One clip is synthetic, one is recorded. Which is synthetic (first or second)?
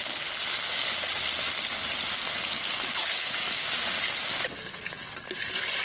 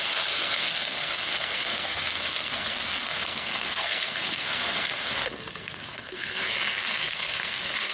second